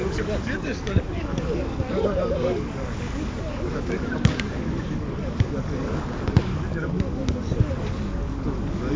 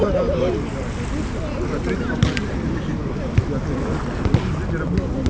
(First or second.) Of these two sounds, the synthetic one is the first